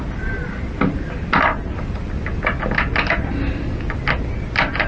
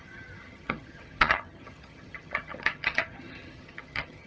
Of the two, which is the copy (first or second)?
second